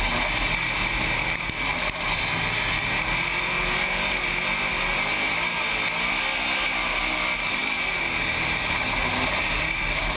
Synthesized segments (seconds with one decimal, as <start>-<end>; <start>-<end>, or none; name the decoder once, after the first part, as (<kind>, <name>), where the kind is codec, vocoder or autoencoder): none